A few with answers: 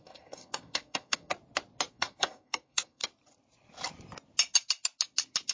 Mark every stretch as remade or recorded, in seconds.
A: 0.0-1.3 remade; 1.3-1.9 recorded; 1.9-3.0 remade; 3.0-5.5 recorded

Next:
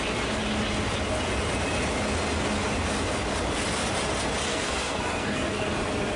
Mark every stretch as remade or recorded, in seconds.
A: 0.0-4.5 recorded; 4.5-5.7 remade; 5.7-6.2 recorded

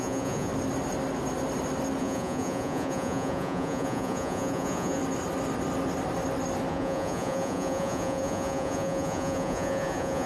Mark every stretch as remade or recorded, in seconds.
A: 0.0-0.5 remade; 0.5-2.0 recorded; 2.0-5.0 remade; 5.0-6.7 recorded; 6.7-10.3 remade

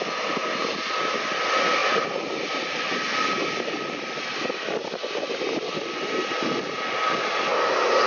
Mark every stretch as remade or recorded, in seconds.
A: 0.0-8.1 recorded

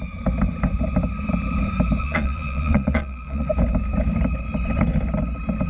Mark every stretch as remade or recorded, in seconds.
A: 0.0-2.0 recorded; 2.0-3.5 remade; 3.5-5.7 recorded

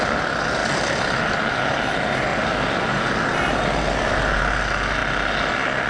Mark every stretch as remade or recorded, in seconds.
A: 0.0-5.9 recorded

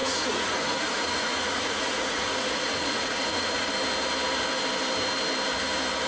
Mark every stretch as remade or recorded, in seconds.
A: 0.0-3.7 remade; 3.7-6.1 recorded